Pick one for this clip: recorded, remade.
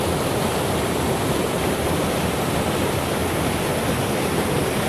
recorded